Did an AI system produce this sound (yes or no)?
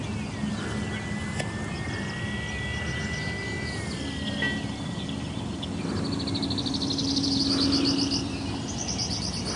no